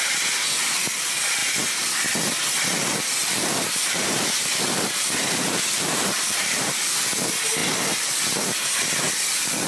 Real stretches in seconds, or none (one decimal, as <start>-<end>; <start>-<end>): 0.0-1.4; 1.9-3.2; 6.7-9.7